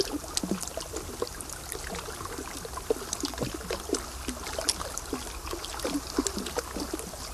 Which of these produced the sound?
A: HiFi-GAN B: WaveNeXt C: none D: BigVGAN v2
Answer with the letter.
C